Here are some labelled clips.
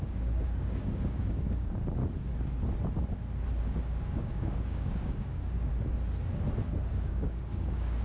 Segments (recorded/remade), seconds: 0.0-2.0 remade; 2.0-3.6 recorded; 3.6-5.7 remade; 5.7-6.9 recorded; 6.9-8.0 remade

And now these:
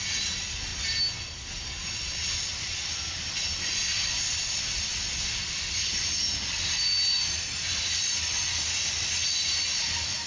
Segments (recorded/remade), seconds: 0.0-10.3 recorded

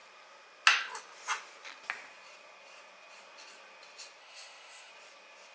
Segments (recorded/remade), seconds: 0.0-4.2 recorded; 4.2-4.9 remade; 4.9-5.5 recorded

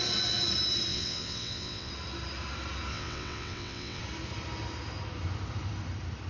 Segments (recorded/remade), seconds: 0.0-0.9 recorded; 0.9-1.9 remade; 1.9-2.9 recorded; 2.9-4.0 remade; 4.0-6.3 recorded

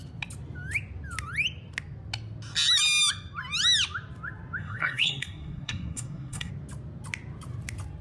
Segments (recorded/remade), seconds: 0.0-4.6 recorded; 4.6-6.5 remade; 6.5-8.0 recorded

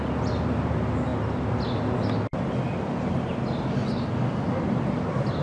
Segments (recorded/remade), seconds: 0.0-5.4 recorded